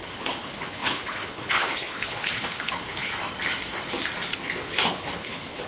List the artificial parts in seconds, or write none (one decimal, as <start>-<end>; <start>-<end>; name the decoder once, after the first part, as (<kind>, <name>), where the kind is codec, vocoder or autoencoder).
0.0-3.1 (codec, HILCodec); 4.7-5.7